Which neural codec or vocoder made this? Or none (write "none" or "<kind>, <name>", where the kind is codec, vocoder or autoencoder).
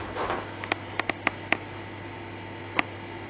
none